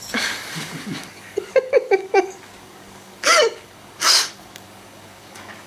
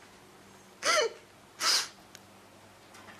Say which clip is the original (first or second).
second